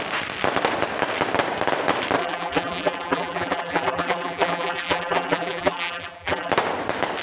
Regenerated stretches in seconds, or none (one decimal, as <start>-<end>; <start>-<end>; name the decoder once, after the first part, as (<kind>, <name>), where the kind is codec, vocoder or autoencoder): 2.2-6.5 (vocoder, BigVGAN v2)